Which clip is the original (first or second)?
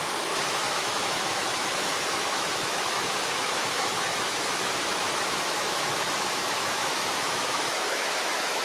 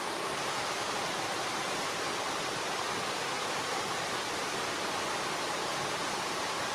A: second